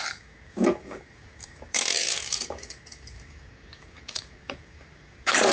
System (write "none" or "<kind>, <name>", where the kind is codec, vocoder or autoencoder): codec, DAC